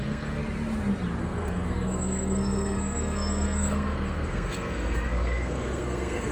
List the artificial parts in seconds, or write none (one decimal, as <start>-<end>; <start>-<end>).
0.0-0.4; 1.2-6.3